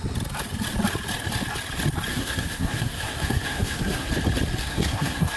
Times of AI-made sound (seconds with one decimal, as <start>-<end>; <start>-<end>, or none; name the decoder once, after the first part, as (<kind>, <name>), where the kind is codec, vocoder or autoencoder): 2.1-4.1 (codec, SNAC); 4.6-5.4